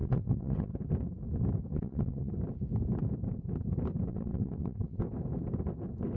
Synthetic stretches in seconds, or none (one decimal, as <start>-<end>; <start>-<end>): 0.0-0.7; 1.7-2.3; 4.1-5.0